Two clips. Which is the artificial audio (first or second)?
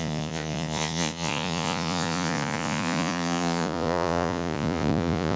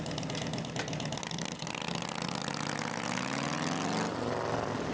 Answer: first